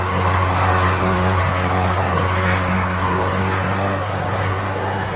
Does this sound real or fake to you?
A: fake